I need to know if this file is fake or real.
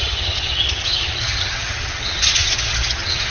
fake